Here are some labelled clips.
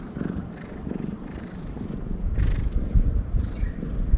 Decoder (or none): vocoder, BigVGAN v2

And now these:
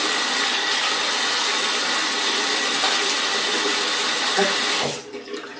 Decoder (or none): none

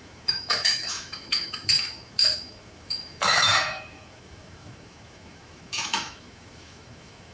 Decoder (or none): autoencoder, DAC-VAE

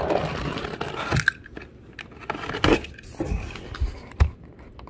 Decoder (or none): none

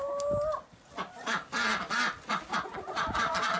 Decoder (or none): none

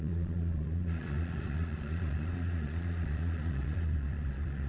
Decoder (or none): vocoder, Vocos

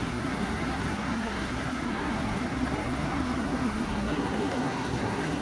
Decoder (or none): codec, SNAC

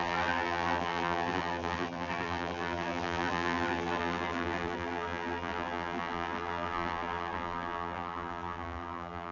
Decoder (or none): vocoder, BigVGAN v2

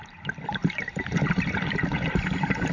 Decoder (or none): none